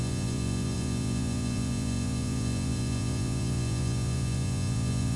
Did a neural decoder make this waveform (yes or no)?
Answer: yes